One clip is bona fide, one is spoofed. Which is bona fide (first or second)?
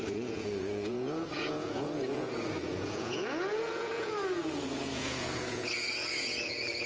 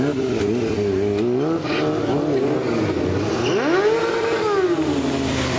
second